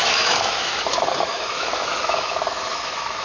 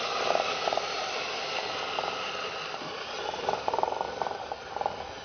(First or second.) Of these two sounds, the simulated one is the first